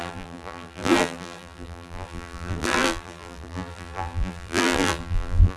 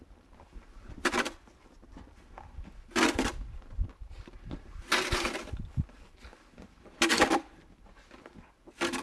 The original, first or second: second